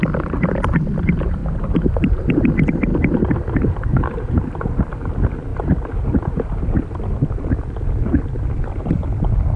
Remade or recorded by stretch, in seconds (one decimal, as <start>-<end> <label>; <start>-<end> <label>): 0.0-1.4 recorded; 1.4-2.4 remade; 2.4-2.9 recorded; 2.9-4.7 remade; 4.7-9.6 recorded